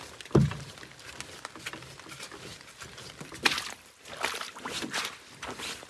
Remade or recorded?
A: recorded